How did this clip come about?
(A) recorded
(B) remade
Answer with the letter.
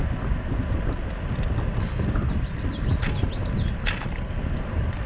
A